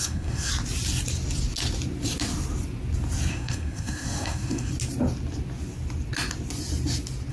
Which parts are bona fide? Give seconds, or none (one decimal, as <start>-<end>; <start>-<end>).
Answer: 0.5-3.3; 4.7-7.3